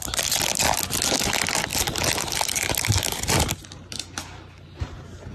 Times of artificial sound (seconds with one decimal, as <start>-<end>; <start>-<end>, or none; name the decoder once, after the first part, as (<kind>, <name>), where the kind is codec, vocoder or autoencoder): none